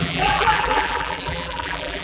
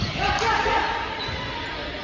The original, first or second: second